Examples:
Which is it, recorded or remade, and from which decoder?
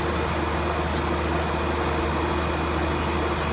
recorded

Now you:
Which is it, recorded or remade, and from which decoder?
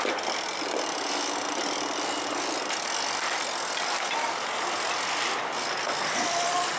recorded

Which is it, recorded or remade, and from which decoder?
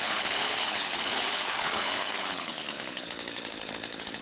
remade, codec, HILCodec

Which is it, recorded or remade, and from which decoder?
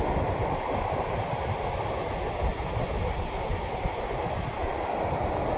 recorded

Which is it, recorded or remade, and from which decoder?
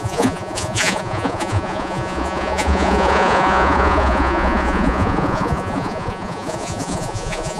remade, vocoder, Vocos